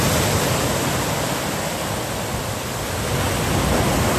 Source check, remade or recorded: recorded